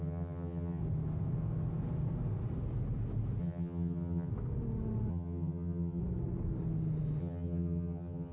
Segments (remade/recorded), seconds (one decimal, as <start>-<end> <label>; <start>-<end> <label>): 0.0-0.8 remade; 0.8-3.4 recorded; 3.4-4.3 remade; 4.3-5.1 recorded; 5.1-6.0 remade; 6.0-7.2 recorded; 7.2-8.3 remade